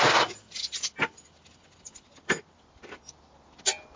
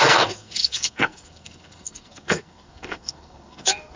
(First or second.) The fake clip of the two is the second